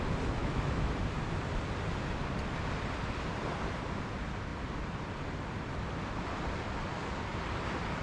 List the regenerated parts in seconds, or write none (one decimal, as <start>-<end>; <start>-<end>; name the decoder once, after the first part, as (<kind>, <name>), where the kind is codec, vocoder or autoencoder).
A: 0.4-0.9 (autoencoder, DAC-VAE)